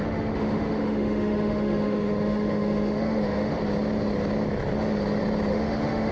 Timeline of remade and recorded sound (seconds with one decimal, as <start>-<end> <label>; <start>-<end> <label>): 0.0-3.6 remade; 3.6-5.5 recorded; 5.5-6.1 remade